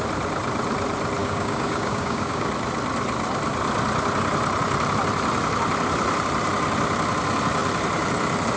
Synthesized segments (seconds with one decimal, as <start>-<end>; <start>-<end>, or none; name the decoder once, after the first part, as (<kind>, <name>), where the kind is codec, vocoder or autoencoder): 1.2-2.5 (codec, DAC)